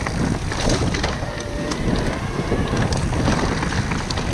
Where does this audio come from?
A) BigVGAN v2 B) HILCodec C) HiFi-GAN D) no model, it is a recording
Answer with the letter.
D